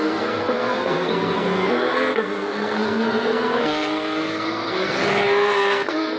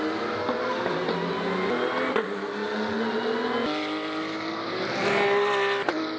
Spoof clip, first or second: first